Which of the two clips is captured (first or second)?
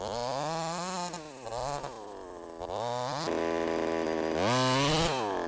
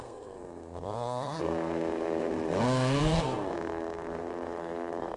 first